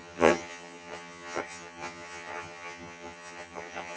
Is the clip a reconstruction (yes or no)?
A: yes